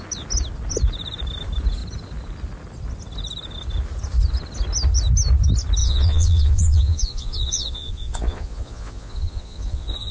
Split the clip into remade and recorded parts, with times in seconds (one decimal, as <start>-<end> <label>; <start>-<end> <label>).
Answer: 0.0-5.8 recorded; 5.8-10.1 remade